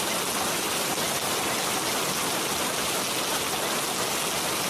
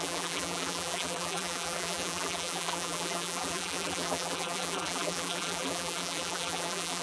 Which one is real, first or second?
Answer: first